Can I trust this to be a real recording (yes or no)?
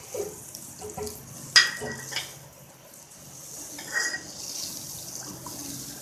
yes